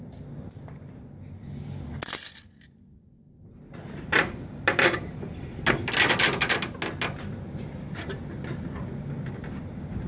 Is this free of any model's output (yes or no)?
yes